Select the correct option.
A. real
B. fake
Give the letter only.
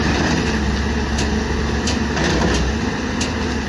A